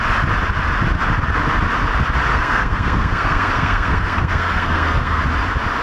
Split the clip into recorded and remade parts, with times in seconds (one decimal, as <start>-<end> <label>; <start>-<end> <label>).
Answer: 0.0-2.3 recorded; 2.3-5.2 remade; 5.2-5.8 recorded